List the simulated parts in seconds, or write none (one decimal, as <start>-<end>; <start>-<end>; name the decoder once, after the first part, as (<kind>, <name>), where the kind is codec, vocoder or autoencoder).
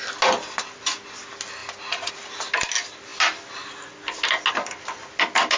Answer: none